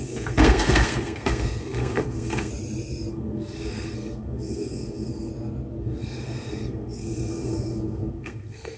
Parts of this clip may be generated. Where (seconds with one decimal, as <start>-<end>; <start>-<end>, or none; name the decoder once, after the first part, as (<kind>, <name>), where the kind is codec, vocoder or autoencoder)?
0.0-2.5 (codec, SNAC); 3.1-5.3; 5.8-8.8